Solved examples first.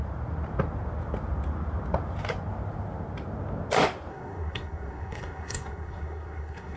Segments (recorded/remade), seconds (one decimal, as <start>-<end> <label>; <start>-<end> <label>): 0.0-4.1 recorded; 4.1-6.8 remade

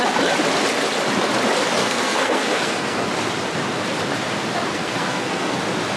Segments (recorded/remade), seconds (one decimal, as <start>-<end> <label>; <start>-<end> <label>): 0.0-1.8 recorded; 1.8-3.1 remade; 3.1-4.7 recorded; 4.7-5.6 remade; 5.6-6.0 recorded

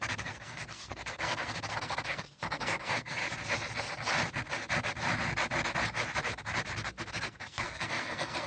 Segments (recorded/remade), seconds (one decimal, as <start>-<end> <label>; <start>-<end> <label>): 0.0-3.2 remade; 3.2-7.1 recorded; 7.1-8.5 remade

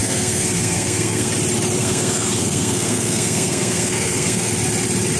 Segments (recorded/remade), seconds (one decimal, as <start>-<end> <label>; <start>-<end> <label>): 0.0-1.3 remade; 1.3-1.8 recorded; 1.8-4.5 remade; 4.5-5.2 recorded

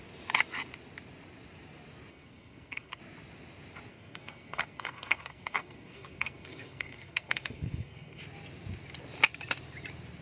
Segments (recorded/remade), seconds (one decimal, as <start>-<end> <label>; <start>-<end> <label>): 0.0-2.1 recorded; 2.1-3.0 remade; 3.0-3.9 recorded; 3.9-8.2 remade; 8.2-10.2 recorded

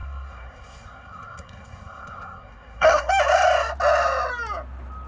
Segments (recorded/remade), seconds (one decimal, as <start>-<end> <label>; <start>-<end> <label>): 0.0-3.1 remade; 3.1-5.1 recorded